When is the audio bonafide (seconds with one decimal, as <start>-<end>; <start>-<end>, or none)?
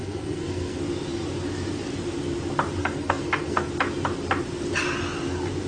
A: 0.8-2.8; 3.7-5.7